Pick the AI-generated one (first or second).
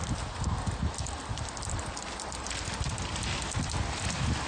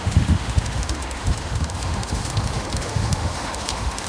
second